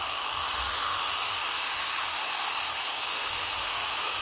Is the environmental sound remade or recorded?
remade